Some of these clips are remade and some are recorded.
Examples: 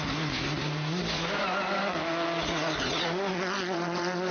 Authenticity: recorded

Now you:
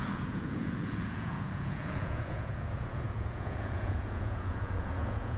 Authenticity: remade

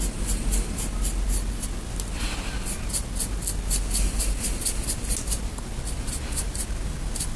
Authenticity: recorded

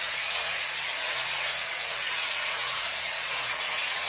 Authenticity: remade